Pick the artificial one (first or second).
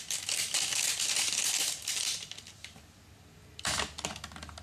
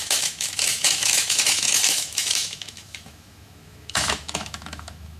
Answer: second